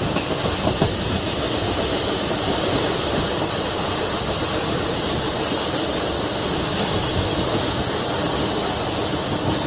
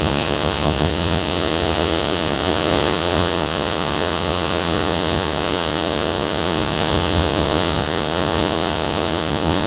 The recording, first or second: first